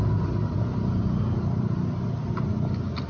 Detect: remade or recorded recorded